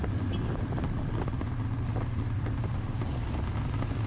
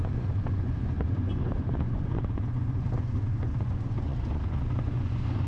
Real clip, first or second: first